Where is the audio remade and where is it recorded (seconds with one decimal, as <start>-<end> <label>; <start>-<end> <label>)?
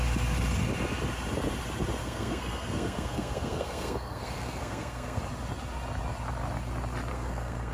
0.0-2.0 recorded; 2.0-5.2 remade; 5.2-7.1 recorded; 7.1-7.7 remade